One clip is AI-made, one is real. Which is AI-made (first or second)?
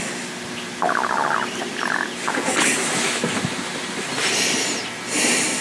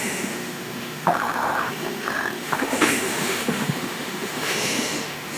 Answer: second